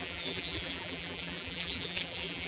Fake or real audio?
fake